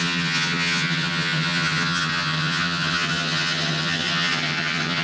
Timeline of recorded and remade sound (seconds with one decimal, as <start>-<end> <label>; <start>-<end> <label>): 0.0-5.0 remade

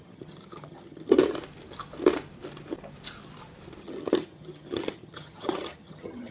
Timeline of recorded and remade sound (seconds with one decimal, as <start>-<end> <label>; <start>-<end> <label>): 0.0-1.2 remade; 1.2-3.8 recorded; 3.8-6.3 remade

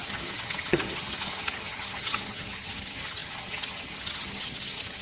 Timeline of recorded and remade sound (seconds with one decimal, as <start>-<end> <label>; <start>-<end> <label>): 0.0-5.0 remade

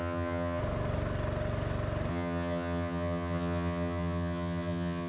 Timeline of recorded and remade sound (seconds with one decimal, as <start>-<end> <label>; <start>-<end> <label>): 0.0-0.6 remade; 0.6-2.1 recorded; 2.1-5.1 remade

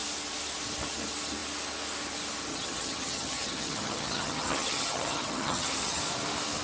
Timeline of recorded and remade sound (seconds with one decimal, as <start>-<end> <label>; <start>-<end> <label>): 0.0-2.5 recorded; 2.5-6.0 remade; 6.0-6.6 recorded

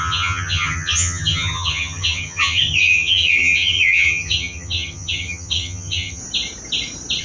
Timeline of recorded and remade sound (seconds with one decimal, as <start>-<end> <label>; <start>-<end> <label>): 0.0-6.2 remade; 6.2-7.2 recorded

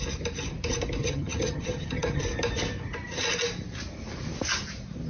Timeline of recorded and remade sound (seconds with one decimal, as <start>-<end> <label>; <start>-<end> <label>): 0.0-1.0 recorded; 1.0-2.2 remade; 2.2-5.1 recorded

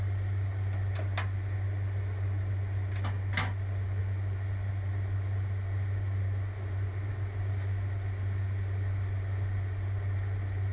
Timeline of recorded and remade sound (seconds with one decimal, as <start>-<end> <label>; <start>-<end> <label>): 0.0-10.7 recorded